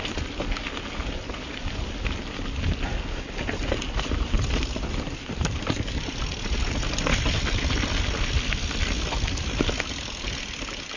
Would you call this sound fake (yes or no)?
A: no